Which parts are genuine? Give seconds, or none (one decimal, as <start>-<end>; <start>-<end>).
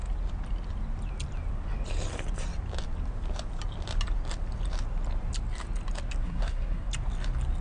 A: 0.0-6.2; 6.9-7.6